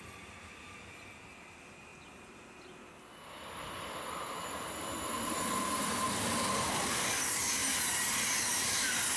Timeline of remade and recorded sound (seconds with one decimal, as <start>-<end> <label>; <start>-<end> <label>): 0.0-9.2 recorded